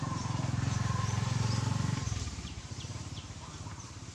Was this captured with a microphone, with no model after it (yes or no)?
no